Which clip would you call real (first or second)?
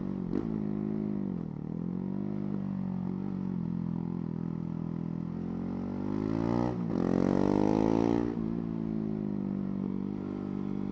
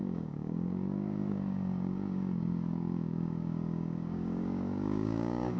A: first